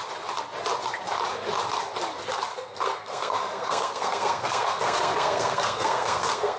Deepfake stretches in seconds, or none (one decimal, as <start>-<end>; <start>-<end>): 2.5-6.6